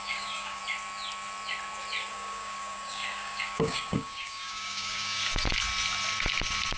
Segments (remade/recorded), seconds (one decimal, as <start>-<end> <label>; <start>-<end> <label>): 0.0-0.6 remade; 0.6-2.1 recorded; 2.1-5.2 remade; 5.2-6.8 recorded